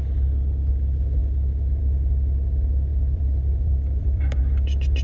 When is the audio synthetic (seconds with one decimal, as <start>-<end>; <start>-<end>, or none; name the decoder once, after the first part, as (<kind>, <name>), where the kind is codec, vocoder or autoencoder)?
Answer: 2.9-4.4 (vocoder, BigVGAN v2)

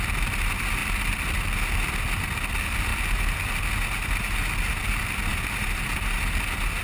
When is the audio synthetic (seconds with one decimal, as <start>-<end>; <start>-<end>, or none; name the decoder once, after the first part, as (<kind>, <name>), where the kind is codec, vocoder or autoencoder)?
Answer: none

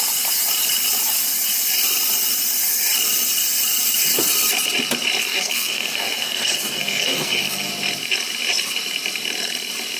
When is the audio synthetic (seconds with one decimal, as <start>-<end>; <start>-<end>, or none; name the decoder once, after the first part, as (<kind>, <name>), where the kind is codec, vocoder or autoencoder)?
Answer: 5.2-7.7 (codec, SNAC)

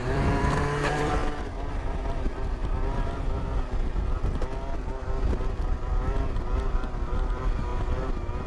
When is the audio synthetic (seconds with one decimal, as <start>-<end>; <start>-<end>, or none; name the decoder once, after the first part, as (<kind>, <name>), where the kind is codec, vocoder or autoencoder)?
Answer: 0.0-1.2 (vocoder, BigVGAN v2); 1.7-2.6; 5.7-7.7

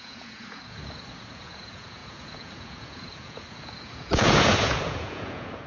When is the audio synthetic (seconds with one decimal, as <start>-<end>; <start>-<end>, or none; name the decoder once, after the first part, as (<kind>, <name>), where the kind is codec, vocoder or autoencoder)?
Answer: 0.0-5.7 (vocoder, Vocos)

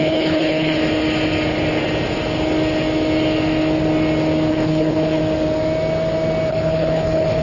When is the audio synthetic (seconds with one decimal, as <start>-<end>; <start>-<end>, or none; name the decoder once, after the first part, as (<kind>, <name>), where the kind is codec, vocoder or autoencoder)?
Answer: 0.0-0.8 (codec, HILCodec); 4.5-5.2; 6.5-7.4